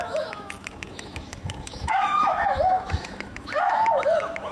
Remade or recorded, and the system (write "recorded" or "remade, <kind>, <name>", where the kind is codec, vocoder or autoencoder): remade, autoencoder, DAC-VAE